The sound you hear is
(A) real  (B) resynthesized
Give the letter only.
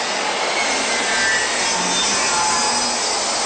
A